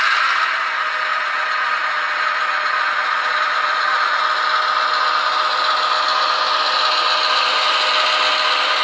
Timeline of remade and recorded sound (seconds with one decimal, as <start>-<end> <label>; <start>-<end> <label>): 0.0-1.1 recorded; 1.1-4.2 remade; 4.2-8.8 recorded